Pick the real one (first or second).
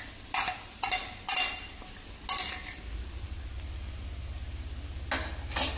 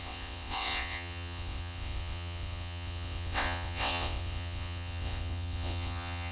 first